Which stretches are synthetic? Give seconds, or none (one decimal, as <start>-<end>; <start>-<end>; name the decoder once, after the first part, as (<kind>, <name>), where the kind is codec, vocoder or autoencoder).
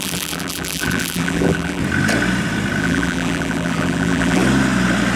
0.0-1.8 (vocoder, BigVGAN v2); 2.8-4.4